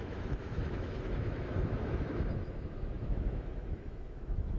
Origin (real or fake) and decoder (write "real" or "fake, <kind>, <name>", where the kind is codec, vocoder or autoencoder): fake, autoencoder, DAC-VAE